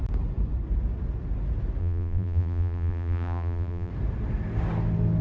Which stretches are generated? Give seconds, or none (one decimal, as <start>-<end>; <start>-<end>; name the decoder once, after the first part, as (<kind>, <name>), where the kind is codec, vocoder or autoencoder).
1.8-3.9 (vocoder, BigVGAN v2)